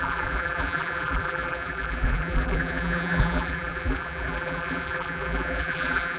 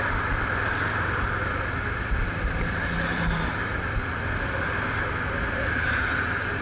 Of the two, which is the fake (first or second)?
first